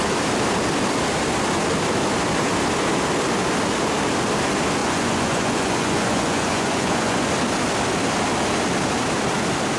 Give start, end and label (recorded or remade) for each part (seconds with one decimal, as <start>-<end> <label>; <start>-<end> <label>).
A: 0.0-4.8 recorded; 4.8-7.3 remade; 7.3-9.8 recorded

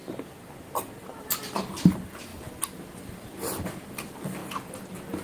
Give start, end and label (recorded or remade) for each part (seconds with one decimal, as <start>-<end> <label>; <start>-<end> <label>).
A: 0.0-5.2 recorded

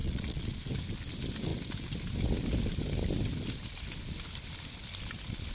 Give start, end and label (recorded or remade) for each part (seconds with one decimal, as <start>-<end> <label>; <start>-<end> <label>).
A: 0.0-0.7 remade; 0.7-5.5 recorded

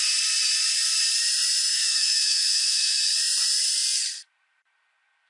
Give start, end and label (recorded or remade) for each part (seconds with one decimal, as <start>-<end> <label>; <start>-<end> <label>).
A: 0.0-1.7 recorded; 1.7-3.0 remade; 3.0-5.3 recorded

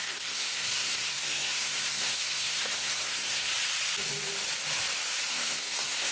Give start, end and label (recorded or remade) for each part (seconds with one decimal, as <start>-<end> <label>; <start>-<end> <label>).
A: 0.0-3.5 remade; 3.5-5.3 recorded; 5.3-6.1 remade

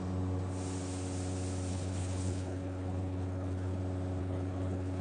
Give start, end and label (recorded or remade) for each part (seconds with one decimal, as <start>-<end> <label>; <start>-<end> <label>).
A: 0.0-1.7 recorded; 1.7-3.8 remade; 3.8-4.2 recorded; 4.2-5.0 remade